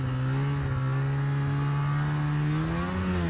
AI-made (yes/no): no